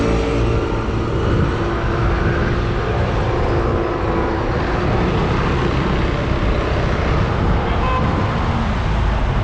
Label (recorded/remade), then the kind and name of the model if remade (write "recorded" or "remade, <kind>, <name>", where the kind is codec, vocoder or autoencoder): recorded